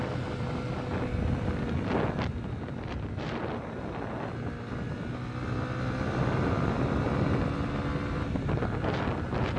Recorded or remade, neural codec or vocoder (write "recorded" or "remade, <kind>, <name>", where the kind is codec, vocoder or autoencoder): recorded